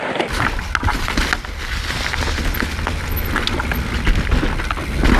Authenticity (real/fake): real